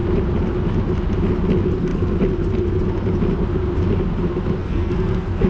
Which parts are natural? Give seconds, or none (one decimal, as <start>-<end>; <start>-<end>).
0.0-4.6